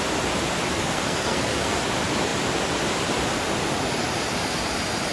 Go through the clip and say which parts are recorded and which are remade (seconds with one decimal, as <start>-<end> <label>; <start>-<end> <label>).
0.0-0.7 recorded; 0.7-1.8 remade; 1.8-5.1 recorded

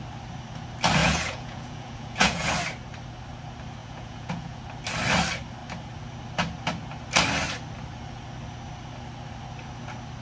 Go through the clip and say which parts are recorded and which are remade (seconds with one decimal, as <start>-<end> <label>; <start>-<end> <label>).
0.0-1.0 recorded; 1.0-2.5 remade; 2.5-3.8 recorded; 3.8-4.6 remade; 4.6-10.2 recorded

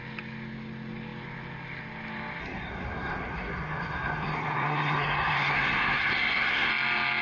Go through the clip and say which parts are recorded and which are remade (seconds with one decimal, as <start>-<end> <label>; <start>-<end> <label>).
0.0-2.4 recorded; 2.4-6.7 remade; 6.7-7.2 recorded

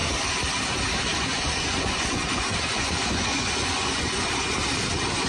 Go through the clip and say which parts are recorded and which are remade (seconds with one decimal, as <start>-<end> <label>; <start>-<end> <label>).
0.0-1.1 recorded; 1.1-4.3 remade; 4.3-5.3 recorded

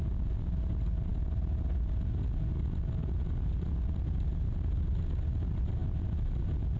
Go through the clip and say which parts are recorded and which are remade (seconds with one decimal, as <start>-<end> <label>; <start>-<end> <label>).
0.0-6.8 recorded

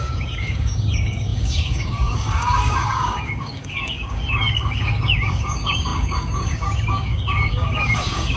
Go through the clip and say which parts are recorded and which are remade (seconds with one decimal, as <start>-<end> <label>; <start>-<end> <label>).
0.0-8.4 remade

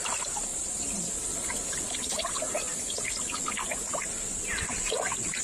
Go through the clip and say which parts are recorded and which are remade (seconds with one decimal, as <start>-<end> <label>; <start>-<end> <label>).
0.0-0.5 recorded; 0.5-1.1 remade; 1.1-5.4 recorded